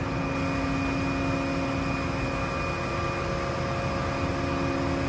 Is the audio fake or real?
real